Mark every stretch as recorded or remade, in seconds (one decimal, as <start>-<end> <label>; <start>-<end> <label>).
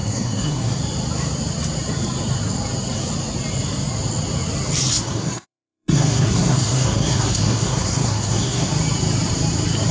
0.0-0.8 remade; 0.8-4.9 recorded; 4.9-8.7 remade; 8.7-9.9 recorded